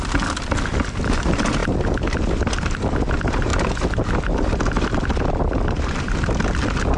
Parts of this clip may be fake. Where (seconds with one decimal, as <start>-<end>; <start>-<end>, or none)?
0.0-1.6; 2.3-3.5; 4.1-7.0